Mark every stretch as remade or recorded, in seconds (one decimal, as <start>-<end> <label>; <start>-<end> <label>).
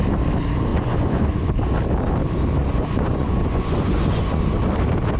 0.0-0.7 recorded; 0.7-1.5 remade; 1.5-2.6 recorded; 2.6-4.4 remade; 4.4-5.2 recorded